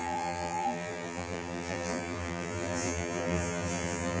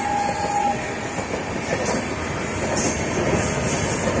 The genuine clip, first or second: second